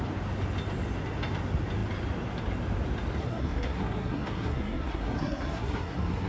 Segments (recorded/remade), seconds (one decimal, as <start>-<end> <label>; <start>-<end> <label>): 0.0-3.2 recorded; 3.2-6.3 remade